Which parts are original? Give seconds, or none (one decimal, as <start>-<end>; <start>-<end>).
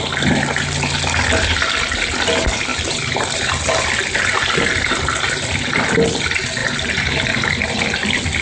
0.0-8.4